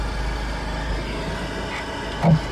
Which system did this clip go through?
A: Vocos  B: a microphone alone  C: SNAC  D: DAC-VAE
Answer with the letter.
B